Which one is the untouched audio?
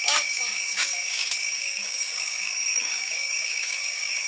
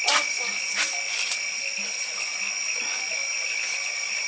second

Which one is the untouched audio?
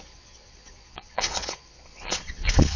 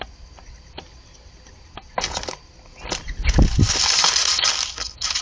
second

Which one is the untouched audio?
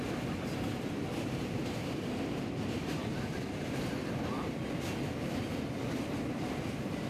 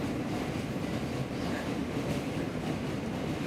second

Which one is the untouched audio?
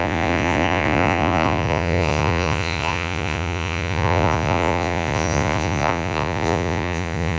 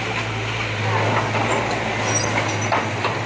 second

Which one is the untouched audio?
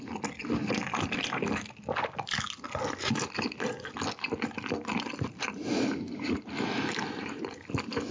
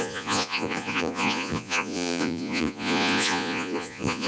first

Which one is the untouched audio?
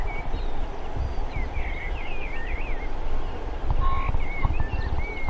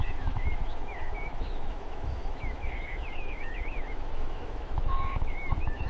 first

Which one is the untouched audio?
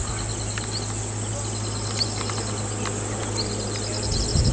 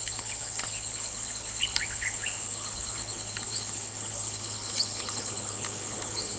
first